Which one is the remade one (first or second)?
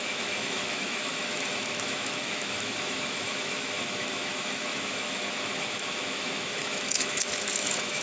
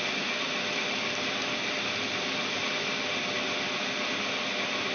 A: first